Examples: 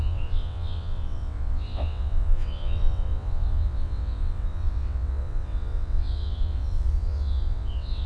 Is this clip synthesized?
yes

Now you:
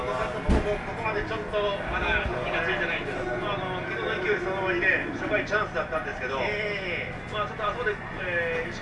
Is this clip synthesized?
no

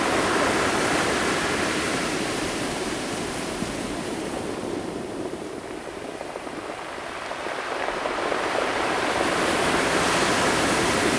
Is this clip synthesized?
yes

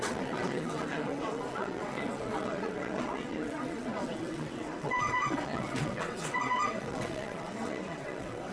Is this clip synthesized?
yes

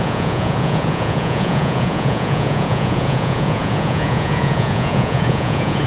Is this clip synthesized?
yes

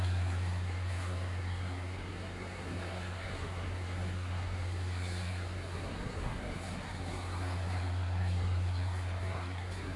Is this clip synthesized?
yes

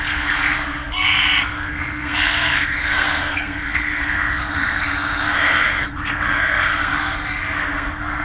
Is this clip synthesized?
yes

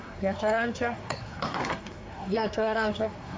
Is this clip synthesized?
yes